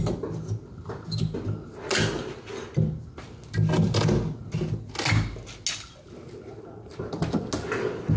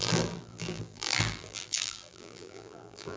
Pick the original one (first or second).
first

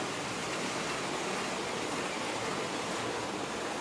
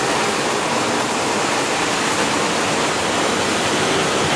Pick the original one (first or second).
first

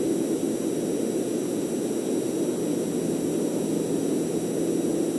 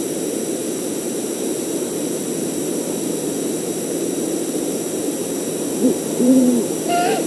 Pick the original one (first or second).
first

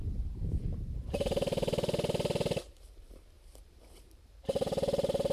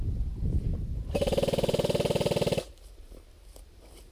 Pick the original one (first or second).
second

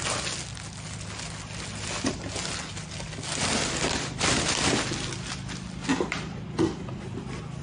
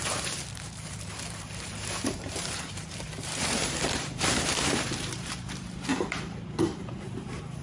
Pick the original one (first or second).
first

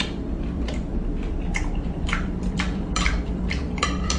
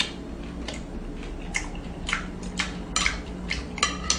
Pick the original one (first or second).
second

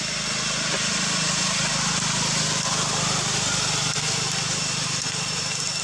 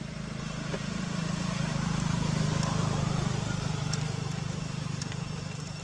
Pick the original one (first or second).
first